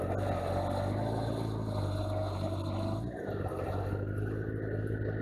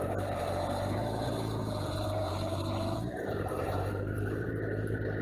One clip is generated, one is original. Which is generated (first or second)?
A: second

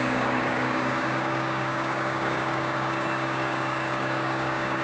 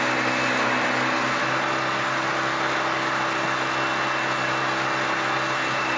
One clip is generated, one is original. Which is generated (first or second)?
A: first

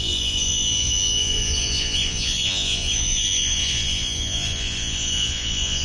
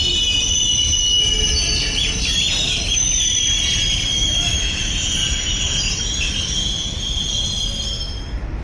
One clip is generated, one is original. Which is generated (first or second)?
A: first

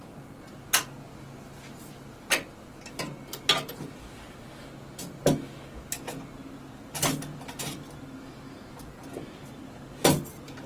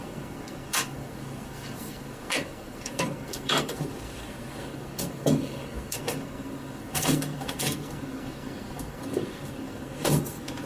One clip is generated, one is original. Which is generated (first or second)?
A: second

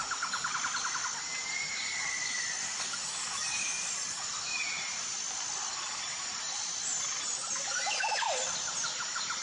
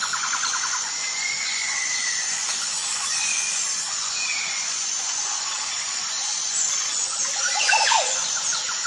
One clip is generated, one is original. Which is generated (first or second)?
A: second